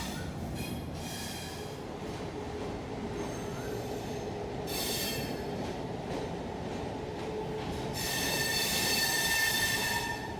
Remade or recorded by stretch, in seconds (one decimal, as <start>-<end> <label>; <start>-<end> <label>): 0.0-3.5 remade; 3.5-8.0 recorded; 8.0-10.4 remade